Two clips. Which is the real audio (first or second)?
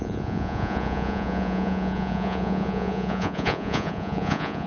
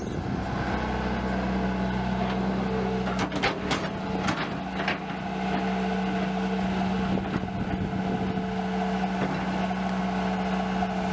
second